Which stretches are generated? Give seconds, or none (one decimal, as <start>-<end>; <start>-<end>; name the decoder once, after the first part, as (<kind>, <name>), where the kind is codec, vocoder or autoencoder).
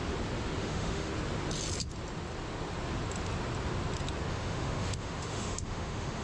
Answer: 0.6-1.1 (autoencoder, DAC-VAE); 4.3-6.2